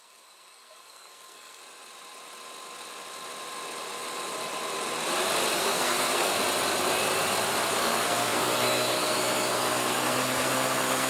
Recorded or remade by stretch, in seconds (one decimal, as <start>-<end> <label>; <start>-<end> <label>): 0.0-1.6 remade; 1.6-5.5 recorded; 5.5-6.4 remade; 6.4-7.7 recorded; 7.7-11.1 remade